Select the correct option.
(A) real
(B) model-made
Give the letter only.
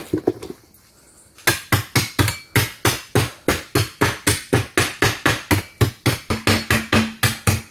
A